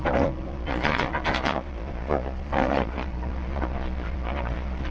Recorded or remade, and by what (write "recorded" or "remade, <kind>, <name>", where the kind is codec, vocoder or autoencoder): remade, vocoder, Vocos